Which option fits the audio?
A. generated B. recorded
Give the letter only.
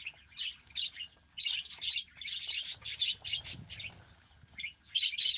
B